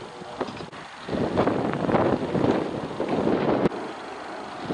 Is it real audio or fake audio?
real